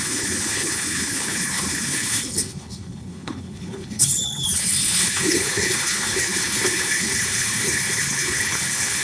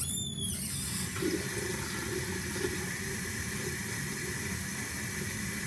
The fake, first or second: first